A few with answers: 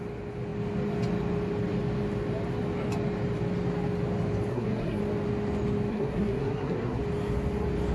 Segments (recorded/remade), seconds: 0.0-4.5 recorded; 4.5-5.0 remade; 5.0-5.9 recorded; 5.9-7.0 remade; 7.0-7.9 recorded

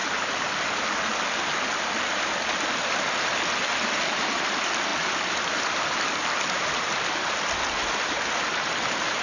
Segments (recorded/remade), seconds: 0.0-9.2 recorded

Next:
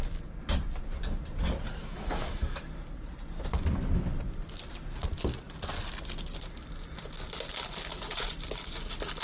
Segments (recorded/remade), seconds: 0.0-1.8 recorded; 1.8-2.6 remade; 2.6-9.2 recorded

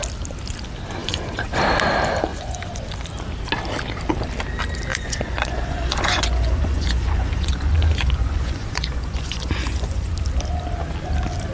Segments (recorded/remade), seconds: 0.0-1.0 recorded; 1.0-1.6 remade; 1.6-2.3 recorded; 2.3-2.9 remade; 2.9-4.9 recorded; 4.9-10.1 remade; 10.1-11.5 recorded

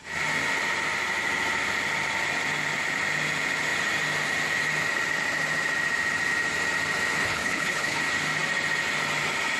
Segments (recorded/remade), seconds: 0.0-7.2 recorded; 7.2-8.0 remade; 8.0-9.6 recorded

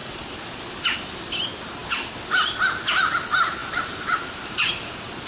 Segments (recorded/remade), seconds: 0.0-0.6 remade; 0.6-3.6 recorded; 3.6-5.3 remade